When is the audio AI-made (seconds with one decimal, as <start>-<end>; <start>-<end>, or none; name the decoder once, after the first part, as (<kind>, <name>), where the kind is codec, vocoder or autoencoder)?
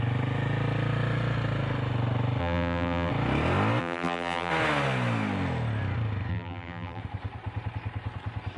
2.4-3.1 (vocoder, BigVGAN v2); 3.8-4.5; 6.3-7.0